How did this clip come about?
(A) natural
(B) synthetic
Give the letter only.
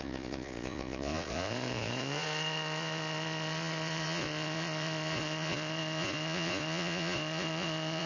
B